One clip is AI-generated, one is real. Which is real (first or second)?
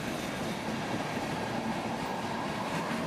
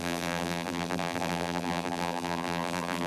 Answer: first